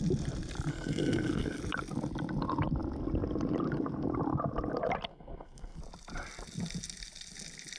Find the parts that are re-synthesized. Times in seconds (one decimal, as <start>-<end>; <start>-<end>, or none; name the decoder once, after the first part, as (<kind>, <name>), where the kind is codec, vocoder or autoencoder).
0.7-1.6 (codec, SNAC); 5.1-5.8